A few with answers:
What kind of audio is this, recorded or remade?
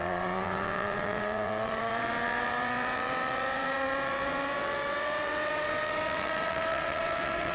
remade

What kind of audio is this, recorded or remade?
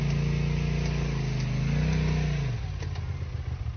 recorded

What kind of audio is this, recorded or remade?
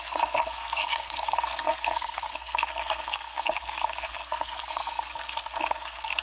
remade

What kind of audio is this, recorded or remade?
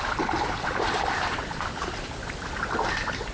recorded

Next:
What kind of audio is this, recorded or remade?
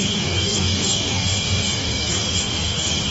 remade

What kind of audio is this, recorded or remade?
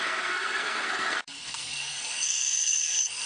remade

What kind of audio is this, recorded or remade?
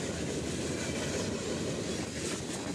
recorded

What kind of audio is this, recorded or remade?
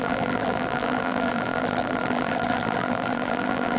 remade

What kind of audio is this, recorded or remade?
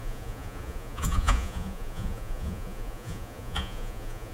remade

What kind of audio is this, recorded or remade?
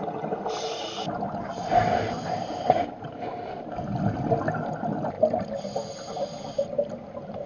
recorded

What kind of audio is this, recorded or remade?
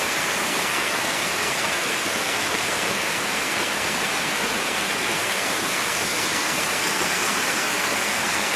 remade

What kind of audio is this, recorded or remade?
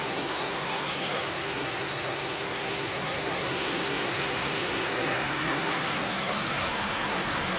remade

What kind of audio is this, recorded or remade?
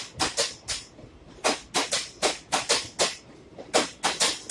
recorded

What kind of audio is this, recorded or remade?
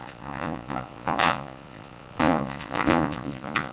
remade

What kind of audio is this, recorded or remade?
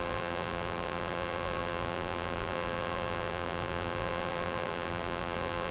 remade